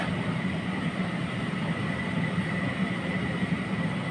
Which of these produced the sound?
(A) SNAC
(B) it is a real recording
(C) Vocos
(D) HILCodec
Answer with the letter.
B